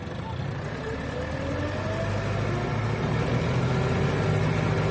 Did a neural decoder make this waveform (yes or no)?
no